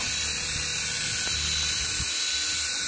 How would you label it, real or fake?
real